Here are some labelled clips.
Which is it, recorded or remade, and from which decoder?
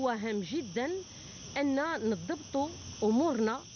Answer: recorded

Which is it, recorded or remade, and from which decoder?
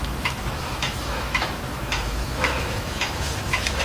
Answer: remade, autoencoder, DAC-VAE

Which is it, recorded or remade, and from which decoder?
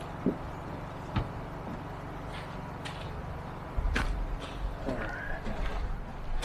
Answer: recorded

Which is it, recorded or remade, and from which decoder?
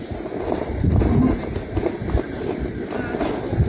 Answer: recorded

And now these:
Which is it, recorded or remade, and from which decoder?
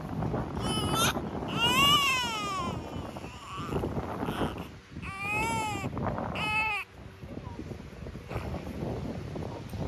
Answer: recorded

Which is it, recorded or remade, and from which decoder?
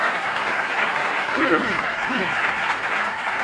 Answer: remade, codec, SNAC